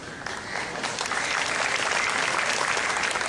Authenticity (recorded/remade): recorded